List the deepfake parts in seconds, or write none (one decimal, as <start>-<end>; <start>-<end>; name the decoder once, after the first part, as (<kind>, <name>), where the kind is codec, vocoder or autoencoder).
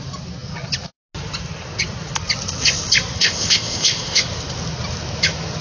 3.2-4.2 (codec, ZipCodec)